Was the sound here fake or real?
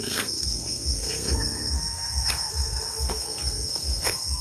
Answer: fake